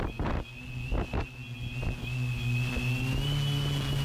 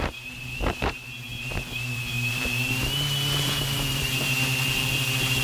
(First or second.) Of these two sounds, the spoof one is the second